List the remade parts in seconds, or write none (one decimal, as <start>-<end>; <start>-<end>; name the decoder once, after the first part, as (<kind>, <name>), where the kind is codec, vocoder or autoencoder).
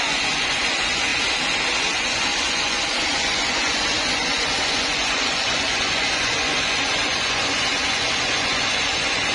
0.0-1.1 (vocoder, Vocos); 1.8-9.3